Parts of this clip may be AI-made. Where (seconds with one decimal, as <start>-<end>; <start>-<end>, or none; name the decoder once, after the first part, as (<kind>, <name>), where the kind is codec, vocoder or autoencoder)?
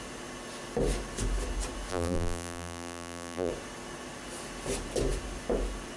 1.9-3.5 (vocoder, BigVGAN v2)